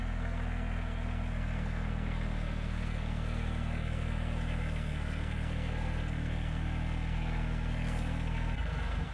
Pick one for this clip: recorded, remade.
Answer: remade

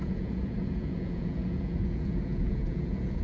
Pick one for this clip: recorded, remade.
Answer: remade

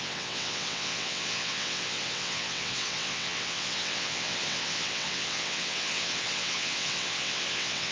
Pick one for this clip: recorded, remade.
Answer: remade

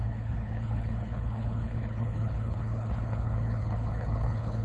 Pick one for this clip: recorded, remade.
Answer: remade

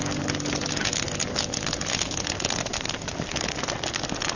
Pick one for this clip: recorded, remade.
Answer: recorded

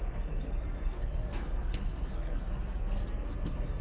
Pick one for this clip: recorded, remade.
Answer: remade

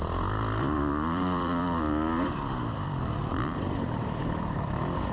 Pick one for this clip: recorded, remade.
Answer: remade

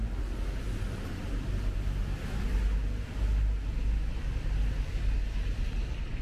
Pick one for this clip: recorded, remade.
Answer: recorded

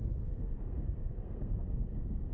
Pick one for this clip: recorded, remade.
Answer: remade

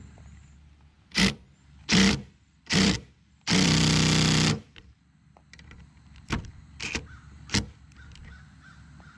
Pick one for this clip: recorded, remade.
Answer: remade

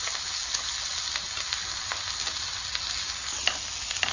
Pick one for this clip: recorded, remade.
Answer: recorded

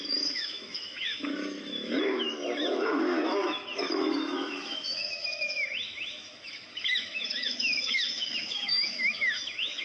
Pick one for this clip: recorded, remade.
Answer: remade